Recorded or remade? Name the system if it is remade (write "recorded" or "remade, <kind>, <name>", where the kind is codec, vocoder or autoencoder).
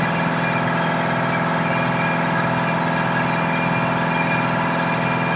recorded